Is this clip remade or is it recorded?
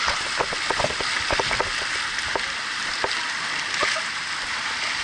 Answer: recorded